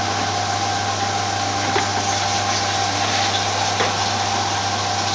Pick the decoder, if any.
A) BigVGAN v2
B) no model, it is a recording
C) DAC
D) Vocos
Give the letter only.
B